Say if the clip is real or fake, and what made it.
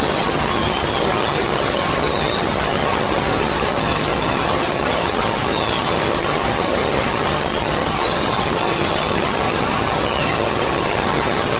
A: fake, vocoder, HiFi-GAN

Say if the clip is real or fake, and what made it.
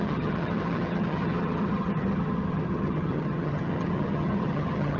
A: fake, vocoder, HiFi-GAN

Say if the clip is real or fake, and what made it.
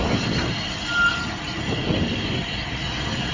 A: real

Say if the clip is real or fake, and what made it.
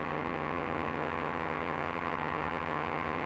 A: fake, vocoder, HiFi-GAN